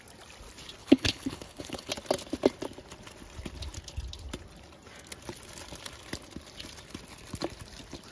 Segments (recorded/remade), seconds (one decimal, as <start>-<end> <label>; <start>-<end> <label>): 0.0-0.8 recorded; 0.8-1.9 remade; 1.9-8.1 recorded

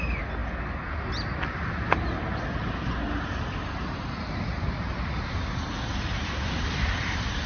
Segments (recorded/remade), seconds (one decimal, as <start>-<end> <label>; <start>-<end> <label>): 0.0-5.9 recorded; 5.9-7.5 remade

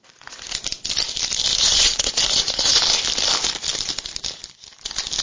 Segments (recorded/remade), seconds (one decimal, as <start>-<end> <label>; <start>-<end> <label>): 0.0-1.5 recorded; 1.5-2.8 remade; 2.8-5.2 recorded

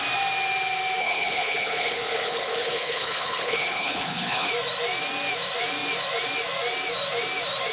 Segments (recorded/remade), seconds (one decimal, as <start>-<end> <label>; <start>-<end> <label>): 0.0-1.0 recorded; 1.0-4.5 remade; 4.5-7.7 recorded